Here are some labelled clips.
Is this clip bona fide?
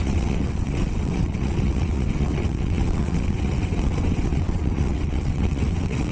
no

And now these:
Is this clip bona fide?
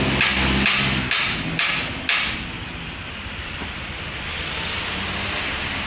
yes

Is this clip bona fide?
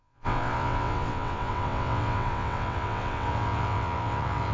no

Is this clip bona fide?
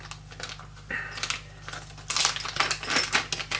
yes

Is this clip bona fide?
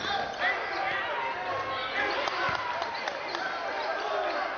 yes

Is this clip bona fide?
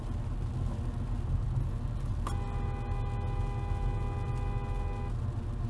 yes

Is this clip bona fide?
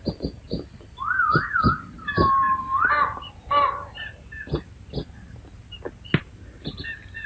yes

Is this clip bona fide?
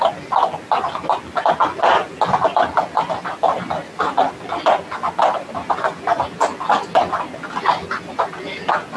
yes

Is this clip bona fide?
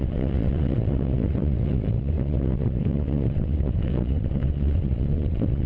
no